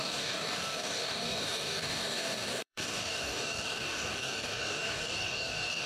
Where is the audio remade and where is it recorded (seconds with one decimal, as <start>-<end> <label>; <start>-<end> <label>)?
0.0-5.9 remade